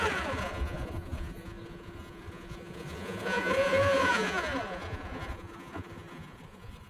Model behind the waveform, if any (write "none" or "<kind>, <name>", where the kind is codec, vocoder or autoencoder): vocoder, Vocos